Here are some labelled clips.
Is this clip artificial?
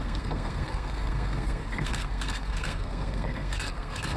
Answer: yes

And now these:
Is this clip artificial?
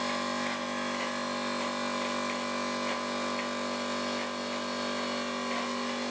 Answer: no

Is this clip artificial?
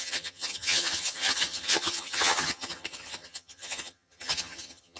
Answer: yes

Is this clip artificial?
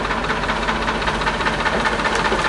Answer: no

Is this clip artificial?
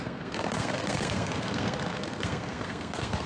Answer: yes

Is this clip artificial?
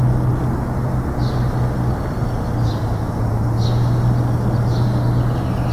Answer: no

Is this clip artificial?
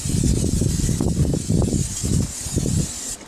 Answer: no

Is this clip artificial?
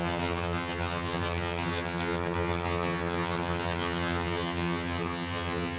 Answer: yes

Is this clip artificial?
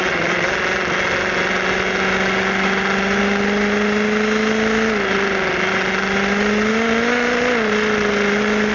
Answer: no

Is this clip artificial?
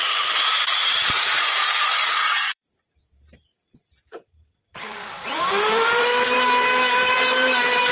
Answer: yes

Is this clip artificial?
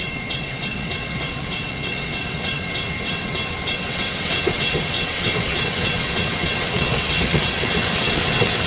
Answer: yes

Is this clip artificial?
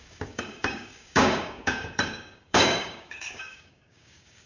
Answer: yes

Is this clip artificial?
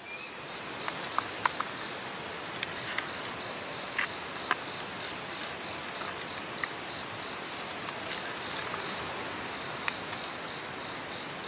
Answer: no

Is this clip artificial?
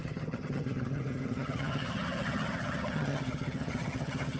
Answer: yes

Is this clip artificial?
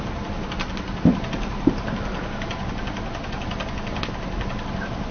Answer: no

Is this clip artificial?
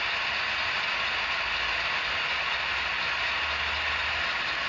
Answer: no